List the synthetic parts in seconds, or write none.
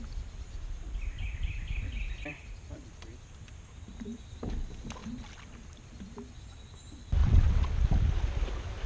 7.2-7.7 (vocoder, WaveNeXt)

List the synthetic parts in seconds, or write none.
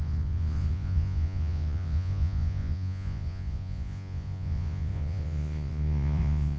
0.0-6.6 (vocoder, Vocos)